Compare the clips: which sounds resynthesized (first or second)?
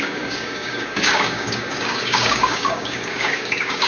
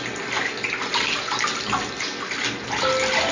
first